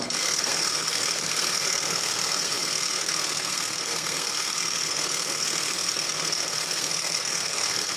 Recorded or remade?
remade